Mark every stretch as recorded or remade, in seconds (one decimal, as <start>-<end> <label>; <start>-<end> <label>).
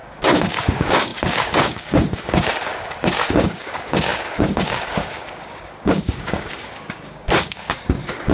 0.0-8.3 remade